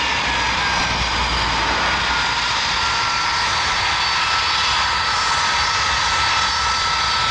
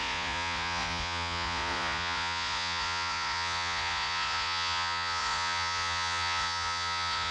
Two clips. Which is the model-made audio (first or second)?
second